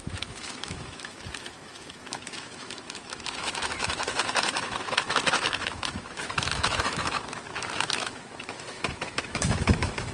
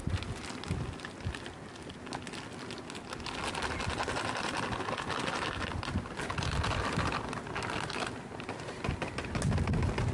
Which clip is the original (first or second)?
second